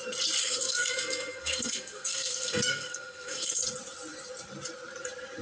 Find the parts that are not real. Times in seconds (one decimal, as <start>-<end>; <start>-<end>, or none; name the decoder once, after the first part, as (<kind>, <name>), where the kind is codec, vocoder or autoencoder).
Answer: 0.4-3.6 (codec, SNAC)